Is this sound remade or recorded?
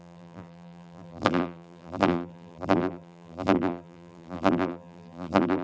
remade